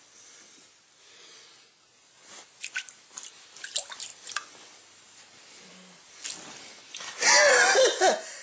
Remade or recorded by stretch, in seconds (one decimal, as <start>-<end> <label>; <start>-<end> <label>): 0.0-8.4 recorded